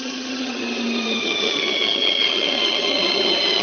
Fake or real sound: fake